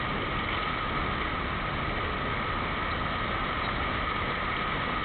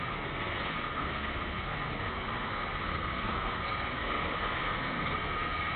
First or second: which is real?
first